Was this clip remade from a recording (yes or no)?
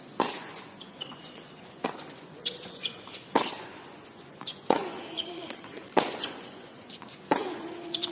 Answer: yes